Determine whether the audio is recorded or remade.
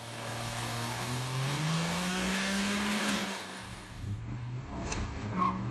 remade